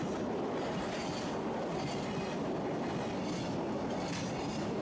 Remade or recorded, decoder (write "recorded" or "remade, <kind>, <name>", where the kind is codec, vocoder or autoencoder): recorded